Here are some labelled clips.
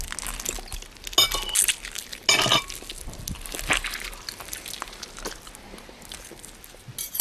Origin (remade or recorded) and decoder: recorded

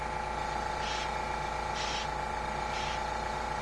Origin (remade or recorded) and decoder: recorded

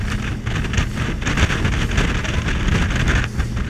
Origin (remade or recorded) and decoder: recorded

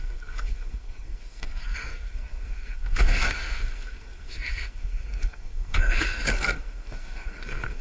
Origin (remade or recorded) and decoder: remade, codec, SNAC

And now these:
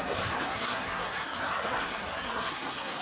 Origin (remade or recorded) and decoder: remade, codec, SNAC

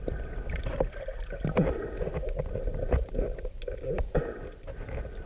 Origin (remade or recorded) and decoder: recorded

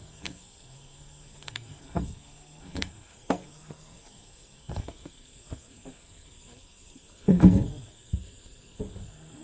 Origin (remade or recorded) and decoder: remade, codec, SNAC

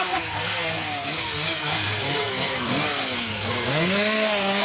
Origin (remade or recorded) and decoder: remade, codec, SNAC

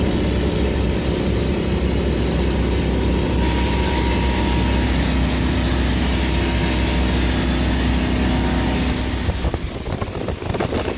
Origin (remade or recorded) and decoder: recorded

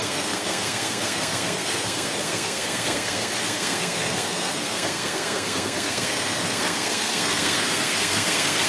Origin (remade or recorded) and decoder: remade, codec, SNAC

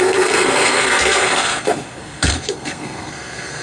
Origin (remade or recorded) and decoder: remade, codec, SNAC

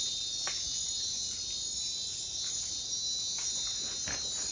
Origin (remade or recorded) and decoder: recorded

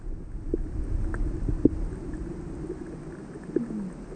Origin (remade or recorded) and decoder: recorded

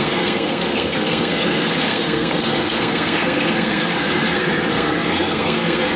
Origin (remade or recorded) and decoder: remade, codec, SNAC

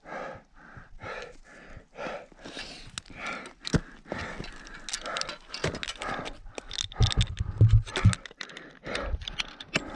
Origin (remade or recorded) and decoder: recorded